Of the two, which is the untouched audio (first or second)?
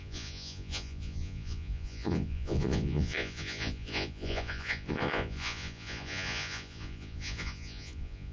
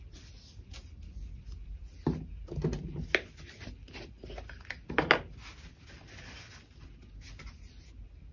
second